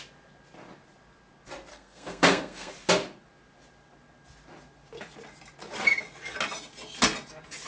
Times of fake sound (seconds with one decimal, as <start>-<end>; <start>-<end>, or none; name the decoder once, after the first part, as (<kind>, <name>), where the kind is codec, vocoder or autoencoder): 1.7-2.7 (codec, SNAC)